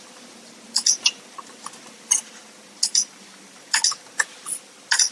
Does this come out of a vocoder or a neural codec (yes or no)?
no